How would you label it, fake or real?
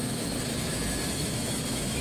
fake